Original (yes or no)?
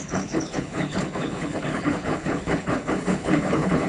no